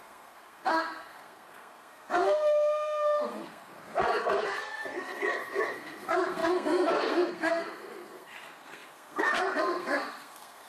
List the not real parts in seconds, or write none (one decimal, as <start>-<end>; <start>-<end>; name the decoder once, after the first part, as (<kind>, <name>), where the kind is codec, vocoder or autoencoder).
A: 0.0-10.7 (codec, SNAC)